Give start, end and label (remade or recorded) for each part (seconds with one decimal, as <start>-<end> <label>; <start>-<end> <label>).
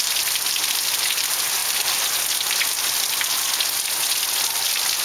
0.0-5.0 recorded